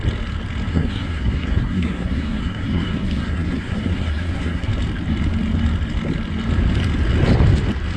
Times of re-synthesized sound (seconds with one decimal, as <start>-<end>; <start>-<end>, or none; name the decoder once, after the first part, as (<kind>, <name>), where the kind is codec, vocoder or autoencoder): 0.7-4.7 (codec, SNAC)